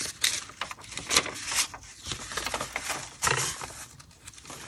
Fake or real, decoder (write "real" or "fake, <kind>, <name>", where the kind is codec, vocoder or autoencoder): real